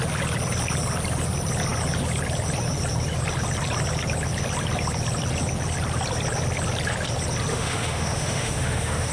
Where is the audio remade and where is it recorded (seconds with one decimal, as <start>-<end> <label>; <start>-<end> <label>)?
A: 0.0-7.5 recorded; 7.5-9.1 remade